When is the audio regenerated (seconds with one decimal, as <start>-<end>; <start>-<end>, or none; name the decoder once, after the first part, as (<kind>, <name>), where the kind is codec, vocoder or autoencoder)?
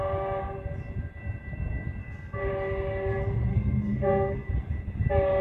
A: 2.0-2.5 (codec, SNAC); 3.5-4.5